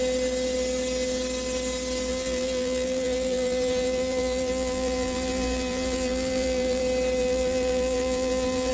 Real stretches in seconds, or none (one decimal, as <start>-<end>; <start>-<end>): 0.0-2.1; 6.8-7.2